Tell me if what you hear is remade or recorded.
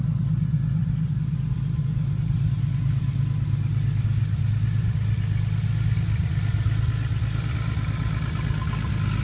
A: recorded